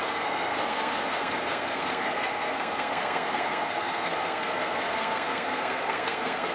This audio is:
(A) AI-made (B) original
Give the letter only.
A